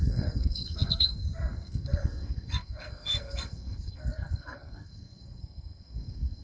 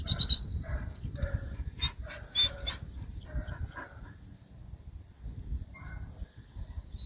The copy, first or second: first